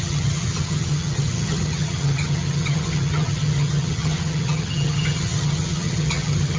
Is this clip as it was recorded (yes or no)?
no